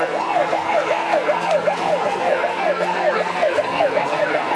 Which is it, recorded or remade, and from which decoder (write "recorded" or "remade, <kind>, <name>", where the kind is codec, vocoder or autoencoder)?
remade, codec, SNAC